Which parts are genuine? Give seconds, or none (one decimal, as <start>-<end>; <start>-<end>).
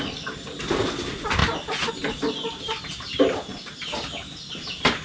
0.0-5.0